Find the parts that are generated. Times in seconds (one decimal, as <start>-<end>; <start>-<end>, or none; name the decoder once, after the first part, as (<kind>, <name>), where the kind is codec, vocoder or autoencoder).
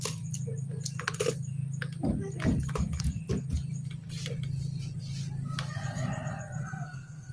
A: 6.6-7.3 (codec, SNAC)